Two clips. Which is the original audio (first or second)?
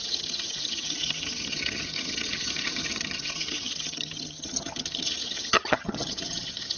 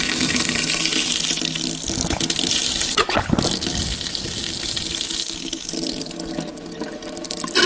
second